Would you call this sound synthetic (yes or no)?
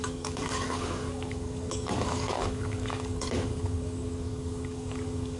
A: yes